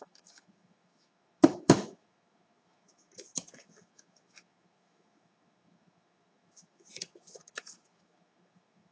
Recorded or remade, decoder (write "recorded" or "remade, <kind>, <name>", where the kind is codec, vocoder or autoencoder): remade, autoencoder, DAC-VAE